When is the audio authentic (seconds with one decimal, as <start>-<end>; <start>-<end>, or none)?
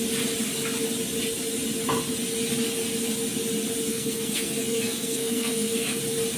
0.0-3.9; 6.0-6.4